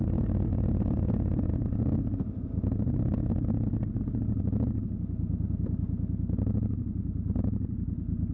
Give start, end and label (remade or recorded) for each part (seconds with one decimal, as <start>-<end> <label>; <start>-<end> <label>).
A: 0.0-0.5 recorded; 0.5-1.5 remade; 1.5-8.3 recorded